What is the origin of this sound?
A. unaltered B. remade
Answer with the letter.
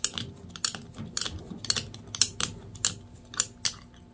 A